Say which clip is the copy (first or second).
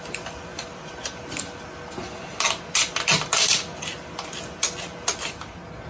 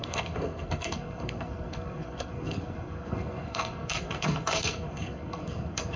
second